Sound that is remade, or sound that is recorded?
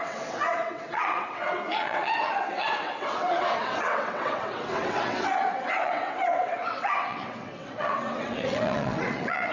remade